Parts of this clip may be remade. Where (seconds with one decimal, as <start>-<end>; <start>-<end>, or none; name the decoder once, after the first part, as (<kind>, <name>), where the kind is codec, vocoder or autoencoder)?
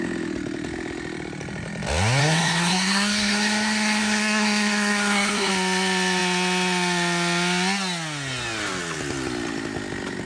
2.2-5.5 (codec, SNAC)